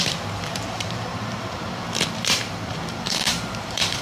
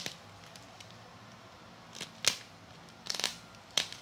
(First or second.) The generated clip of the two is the first